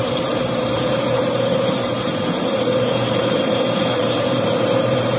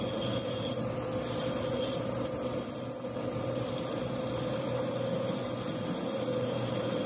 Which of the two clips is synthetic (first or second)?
first